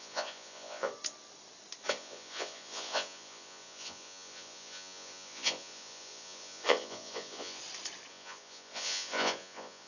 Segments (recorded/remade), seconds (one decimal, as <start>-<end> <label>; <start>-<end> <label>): 0.0-0.9 remade; 0.9-1.9 recorded; 1.9-7.6 remade; 7.6-8.1 recorded; 8.1-9.9 remade